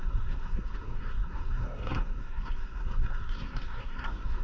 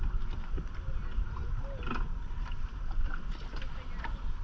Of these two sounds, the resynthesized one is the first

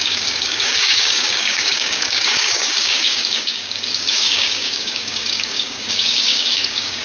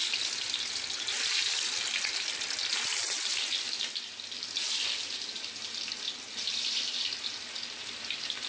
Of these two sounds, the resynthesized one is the first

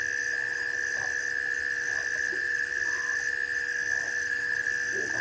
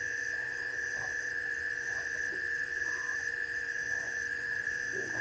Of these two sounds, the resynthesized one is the second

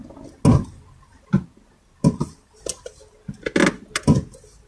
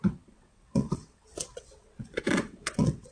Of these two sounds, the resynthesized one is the second